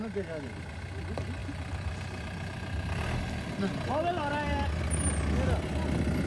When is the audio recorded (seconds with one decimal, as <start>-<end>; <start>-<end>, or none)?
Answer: 0.0-6.3